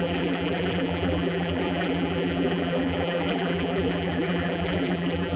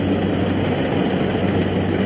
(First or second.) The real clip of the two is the second